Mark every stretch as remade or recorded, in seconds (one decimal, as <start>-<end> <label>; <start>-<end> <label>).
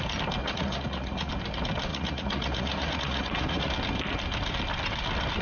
0.0-0.4 recorded; 0.4-1.3 remade; 1.3-1.9 recorded; 1.9-3.7 remade; 3.7-5.4 recorded